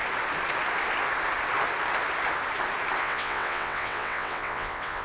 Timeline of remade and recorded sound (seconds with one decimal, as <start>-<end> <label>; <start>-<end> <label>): 0.0-3.0 recorded; 3.0-5.0 remade